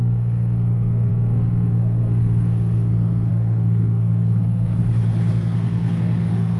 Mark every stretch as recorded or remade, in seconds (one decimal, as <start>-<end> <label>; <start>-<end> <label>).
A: 0.0-4.8 remade; 4.8-5.3 recorded; 5.3-6.6 remade